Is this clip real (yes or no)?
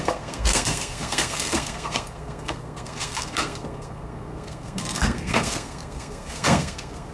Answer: no